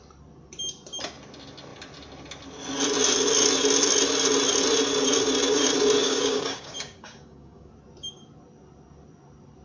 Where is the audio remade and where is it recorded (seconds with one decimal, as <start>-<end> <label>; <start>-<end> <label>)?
0.0-6.0 recorded; 6.0-7.7 remade; 7.7-9.6 recorded